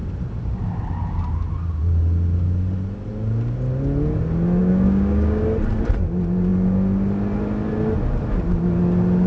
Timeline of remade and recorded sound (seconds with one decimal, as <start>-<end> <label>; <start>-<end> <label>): 0.0-4.6 recorded; 4.6-5.4 remade; 5.4-9.3 recorded